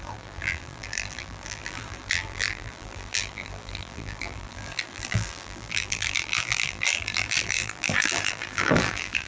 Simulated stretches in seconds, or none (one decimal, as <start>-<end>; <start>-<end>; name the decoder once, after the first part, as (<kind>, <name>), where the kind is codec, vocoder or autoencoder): 0.0-9.3 (vocoder, BigVGAN v2)